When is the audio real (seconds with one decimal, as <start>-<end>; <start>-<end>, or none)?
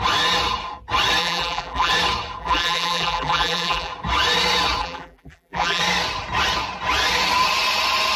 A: 0.0-1.2; 1.9-2.4; 3.9-4.8; 5.8-8.2